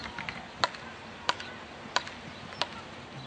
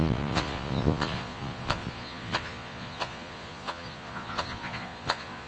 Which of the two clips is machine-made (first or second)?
second